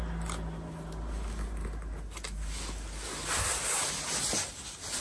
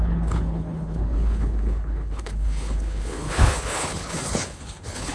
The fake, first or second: second